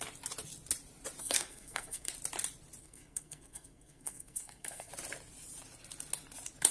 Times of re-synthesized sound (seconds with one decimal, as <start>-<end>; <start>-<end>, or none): 1.2-2.1; 2.8-4.9